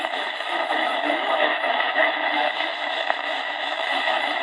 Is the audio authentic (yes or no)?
no